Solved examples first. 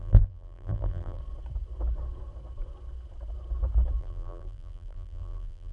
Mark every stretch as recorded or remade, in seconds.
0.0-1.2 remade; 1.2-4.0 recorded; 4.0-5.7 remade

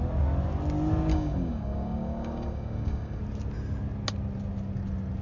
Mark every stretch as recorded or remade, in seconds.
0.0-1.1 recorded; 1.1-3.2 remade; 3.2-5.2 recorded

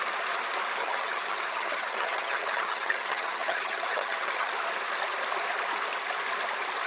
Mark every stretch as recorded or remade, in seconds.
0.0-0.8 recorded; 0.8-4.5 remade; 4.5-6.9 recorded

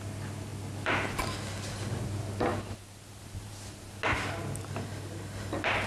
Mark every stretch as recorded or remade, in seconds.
0.0-5.9 recorded

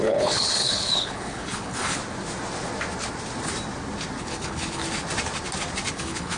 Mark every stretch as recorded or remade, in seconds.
0.0-2.0 remade; 2.0-4.2 recorded; 4.2-4.8 remade; 4.8-5.9 recorded; 5.9-6.4 remade